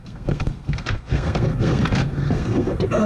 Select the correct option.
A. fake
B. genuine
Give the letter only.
A